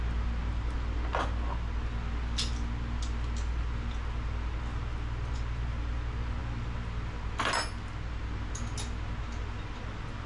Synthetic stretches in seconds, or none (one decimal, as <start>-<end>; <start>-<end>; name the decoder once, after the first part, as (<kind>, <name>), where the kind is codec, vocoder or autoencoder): none